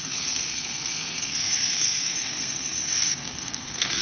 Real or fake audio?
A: fake